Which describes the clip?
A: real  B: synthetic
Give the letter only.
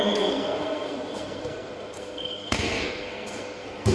B